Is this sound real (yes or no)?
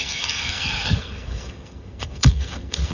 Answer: no